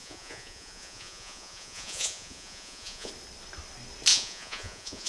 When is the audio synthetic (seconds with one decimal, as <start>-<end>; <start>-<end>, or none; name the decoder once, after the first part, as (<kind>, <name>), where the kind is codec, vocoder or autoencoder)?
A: 0.0-3.1 (vocoder, Vocos); 4.1-5.1